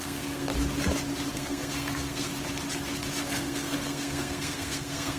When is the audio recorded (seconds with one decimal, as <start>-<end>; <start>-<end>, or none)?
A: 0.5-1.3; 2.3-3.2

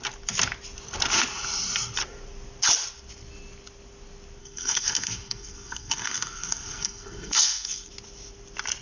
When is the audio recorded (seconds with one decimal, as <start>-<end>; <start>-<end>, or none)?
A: 0.0-4.4; 7.9-8.8

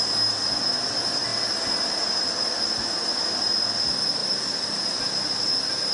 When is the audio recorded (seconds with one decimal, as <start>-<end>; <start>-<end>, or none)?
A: 0.0-4.2; 5.0-5.9